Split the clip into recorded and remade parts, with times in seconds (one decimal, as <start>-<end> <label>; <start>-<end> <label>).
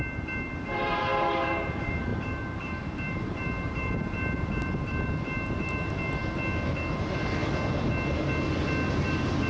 0.0-6.2 remade; 6.2-8.9 recorded; 8.9-9.5 remade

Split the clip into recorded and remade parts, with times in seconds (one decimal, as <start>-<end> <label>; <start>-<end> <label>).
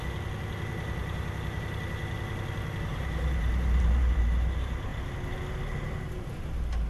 0.0-1.0 recorded; 1.0-1.6 remade; 1.6-2.9 recorded; 2.9-4.2 remade; 4.2-6.9 recorded